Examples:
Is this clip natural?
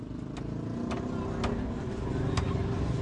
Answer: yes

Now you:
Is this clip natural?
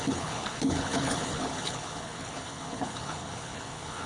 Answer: no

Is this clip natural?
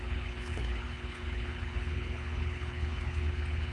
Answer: no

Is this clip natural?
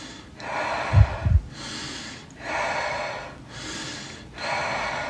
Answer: yes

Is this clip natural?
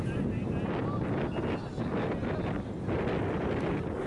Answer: yes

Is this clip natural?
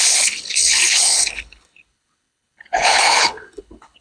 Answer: no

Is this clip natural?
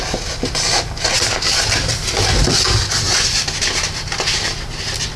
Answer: yes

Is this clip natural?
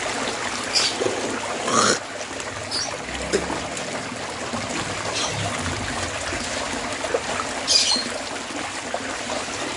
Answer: yes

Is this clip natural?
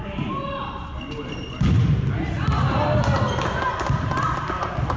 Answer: yes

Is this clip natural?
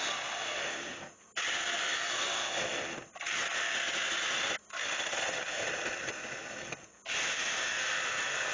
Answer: yes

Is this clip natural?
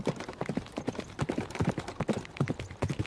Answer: yes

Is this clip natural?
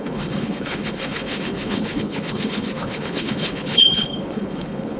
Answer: no